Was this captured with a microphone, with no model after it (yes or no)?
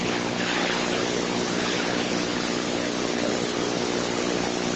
no